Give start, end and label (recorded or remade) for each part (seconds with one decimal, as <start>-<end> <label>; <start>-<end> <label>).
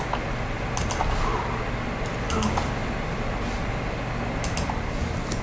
0.0-1.3 recorded; 1.3-2.2 remade; 2.2-2.8 recorded; 2.8-3.5 remade; 3.5-5.4 recorded